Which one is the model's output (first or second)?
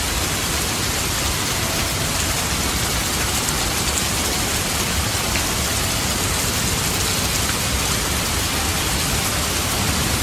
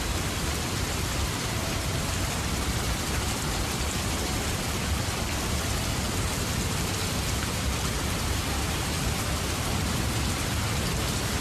second